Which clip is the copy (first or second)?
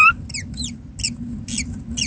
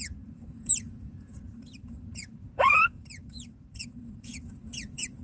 second